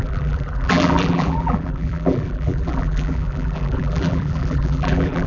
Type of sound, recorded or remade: remade